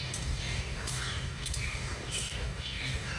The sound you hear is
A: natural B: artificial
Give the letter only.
B